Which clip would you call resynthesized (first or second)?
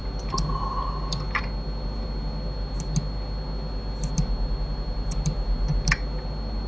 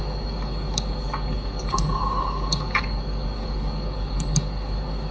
second